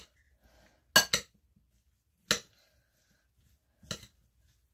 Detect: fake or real real